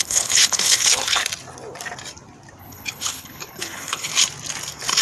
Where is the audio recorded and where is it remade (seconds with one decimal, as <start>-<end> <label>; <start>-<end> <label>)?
0.0-1.2 remade; 1.2-2.6 recorded; 2.6-4.1 remade; 4.1-5.0 recorded